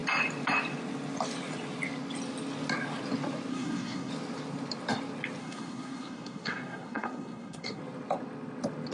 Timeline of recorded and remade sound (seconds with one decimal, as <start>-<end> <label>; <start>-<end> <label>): 0.0-3.5 recorded; 3.5-4.1 remade; 4.1-5.4 recorded; 5.4-7.8 remade; 7.8-8.9 recorded